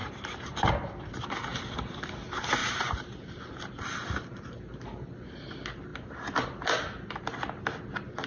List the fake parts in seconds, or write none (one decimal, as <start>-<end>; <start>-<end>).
0.0-0.7; 2.6-4.6